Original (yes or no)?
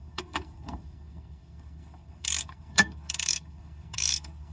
no